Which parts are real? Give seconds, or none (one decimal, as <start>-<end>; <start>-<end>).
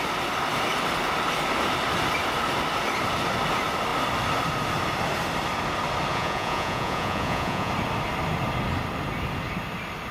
0.0-6.1; 7.7-10.1